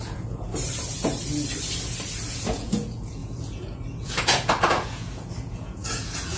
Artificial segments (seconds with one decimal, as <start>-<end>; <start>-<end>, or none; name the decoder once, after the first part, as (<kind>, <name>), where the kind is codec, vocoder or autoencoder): 0.0-0.5 (vocoder, Vocos); 2.3-6.4